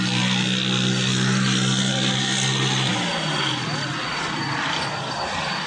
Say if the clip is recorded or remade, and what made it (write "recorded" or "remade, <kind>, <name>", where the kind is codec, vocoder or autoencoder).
recorded